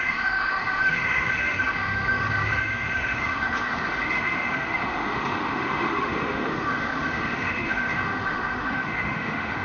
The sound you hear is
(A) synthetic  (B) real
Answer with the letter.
A